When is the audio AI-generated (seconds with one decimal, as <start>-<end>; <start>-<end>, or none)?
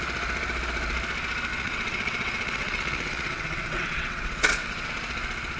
1.5-4.9